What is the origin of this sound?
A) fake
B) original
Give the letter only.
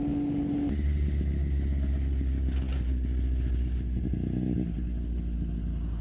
B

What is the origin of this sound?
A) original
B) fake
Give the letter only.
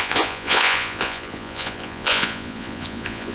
B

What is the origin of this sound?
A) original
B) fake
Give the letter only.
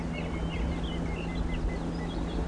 A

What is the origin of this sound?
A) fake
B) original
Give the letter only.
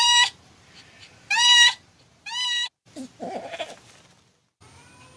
B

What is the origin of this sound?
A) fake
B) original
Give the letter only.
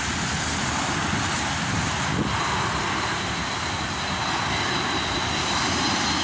B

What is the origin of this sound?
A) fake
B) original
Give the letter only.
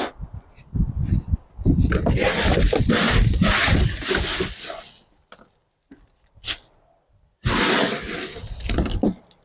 B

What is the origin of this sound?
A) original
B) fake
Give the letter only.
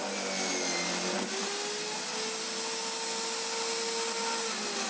A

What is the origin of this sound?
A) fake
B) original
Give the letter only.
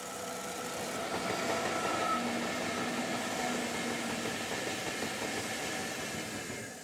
B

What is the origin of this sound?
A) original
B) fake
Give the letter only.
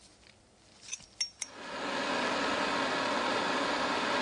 A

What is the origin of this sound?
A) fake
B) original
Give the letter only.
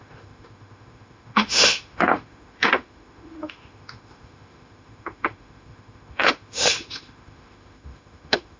A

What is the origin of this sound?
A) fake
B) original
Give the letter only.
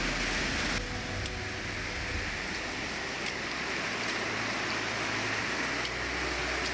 B